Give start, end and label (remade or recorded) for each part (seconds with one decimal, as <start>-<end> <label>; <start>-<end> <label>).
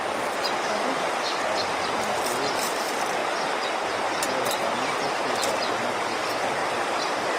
0.0-3.2 remade; 3.2-4.5 recorded; 4.5-7.4 remade